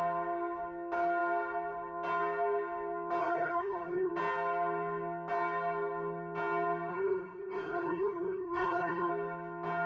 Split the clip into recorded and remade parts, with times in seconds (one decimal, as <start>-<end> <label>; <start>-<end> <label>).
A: 0.0-3.2 recorded; 3.2-4.1 remade; 4.1-6.9 recorded; 6.9-9.1 remade; 9.1-9.9 recorded